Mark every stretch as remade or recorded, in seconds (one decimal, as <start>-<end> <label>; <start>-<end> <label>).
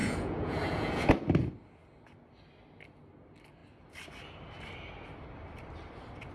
0.0-1.1 remade; 1.1-6.3 recorded